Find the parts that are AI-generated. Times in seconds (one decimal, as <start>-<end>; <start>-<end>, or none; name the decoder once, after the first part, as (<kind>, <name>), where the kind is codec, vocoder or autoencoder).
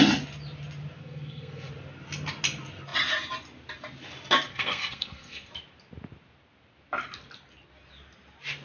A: 1.0-1.7 (codec, SNAC); 4.5-5.5